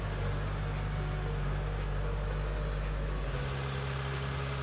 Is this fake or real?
real